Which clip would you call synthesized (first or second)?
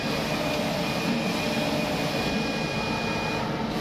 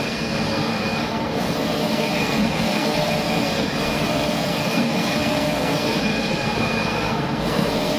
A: second